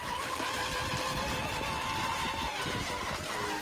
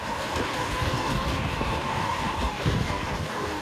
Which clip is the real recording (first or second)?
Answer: first